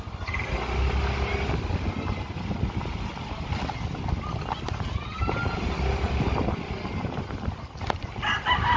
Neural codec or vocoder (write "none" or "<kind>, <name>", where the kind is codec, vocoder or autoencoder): none